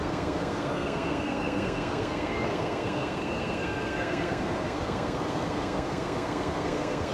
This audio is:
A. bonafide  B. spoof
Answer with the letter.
B